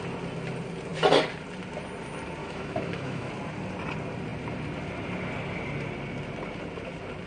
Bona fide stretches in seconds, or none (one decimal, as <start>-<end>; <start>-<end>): 0.0-2.4; 3.3-7.3